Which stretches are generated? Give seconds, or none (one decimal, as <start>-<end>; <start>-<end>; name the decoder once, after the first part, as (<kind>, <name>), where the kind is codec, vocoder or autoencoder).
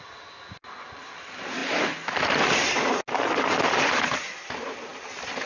none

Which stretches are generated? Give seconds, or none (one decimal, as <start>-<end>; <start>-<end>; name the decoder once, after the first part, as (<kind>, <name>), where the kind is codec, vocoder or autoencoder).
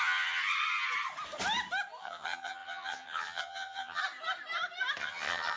0.0-0.4 (vocoder, HiFi-GAN); 2.0-4.0; 5.0-5.6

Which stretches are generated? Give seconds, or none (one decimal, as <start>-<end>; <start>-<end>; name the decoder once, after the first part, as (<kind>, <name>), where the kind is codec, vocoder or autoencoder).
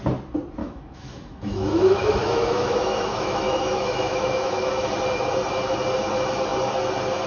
0.6-4.7 (autoencoder, DAC-VAE)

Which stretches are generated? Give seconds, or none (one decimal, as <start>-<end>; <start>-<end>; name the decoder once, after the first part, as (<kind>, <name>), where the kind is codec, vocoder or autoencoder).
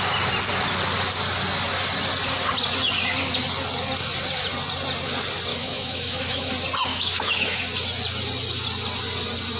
5.5-6.5 (autoencoder, DAC-VAE); 6.9-7.6